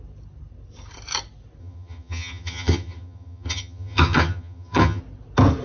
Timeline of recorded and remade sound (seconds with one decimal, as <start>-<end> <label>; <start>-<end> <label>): 0.0-1.6 recorded; 1.6-5.0 remade; 5.0-5.6 recorded